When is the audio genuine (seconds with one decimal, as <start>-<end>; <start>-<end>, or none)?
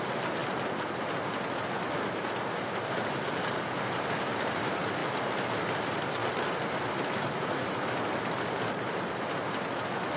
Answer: 0.4-3.1; 6.2-10.2